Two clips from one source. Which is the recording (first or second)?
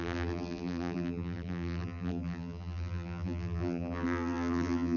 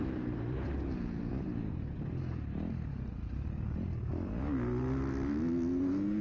second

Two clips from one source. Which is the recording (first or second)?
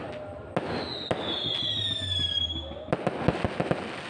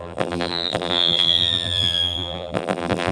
first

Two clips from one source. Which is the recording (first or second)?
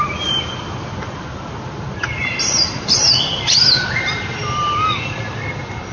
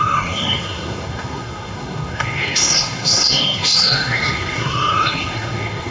first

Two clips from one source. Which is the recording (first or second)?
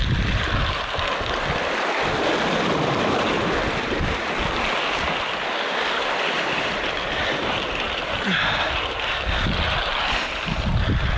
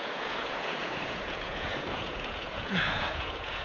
first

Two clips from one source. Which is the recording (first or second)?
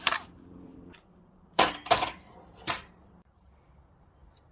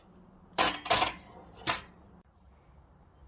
second